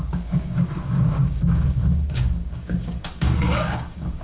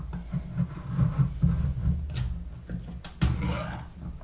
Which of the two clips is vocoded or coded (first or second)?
first